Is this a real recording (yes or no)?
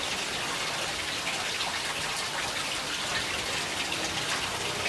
yes